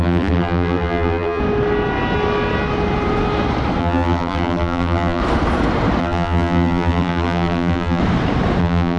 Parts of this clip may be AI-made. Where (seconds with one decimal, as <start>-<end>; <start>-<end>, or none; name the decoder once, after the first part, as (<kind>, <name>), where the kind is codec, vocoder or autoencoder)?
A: 0.0-1.4 (vocoder, BigVGAN v2); 3.8-5.2; 6.0-8.0; 8.6-9.0